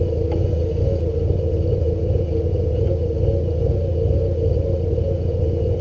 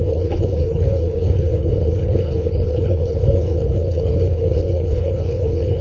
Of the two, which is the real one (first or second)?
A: first